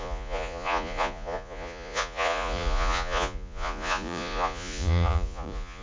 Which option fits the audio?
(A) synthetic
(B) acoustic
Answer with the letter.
A